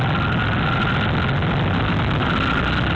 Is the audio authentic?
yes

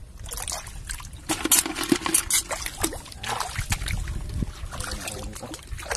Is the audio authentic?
yes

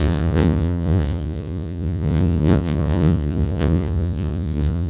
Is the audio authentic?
no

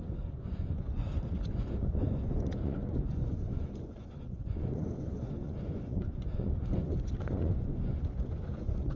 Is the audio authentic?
no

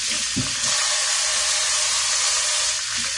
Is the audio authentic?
yes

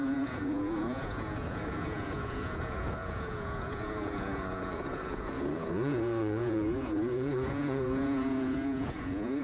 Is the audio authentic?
no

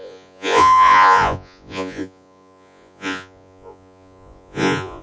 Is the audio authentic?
no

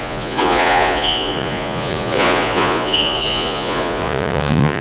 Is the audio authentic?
no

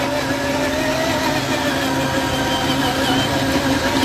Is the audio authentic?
yes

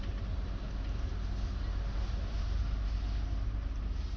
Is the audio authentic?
yes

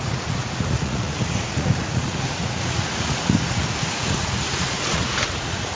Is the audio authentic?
no